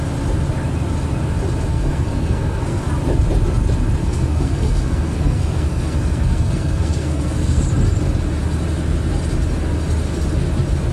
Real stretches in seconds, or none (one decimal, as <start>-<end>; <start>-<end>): 0.0-1.7; 2.8-4.0; 7.6-10.9